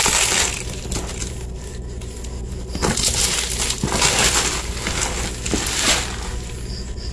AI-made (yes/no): no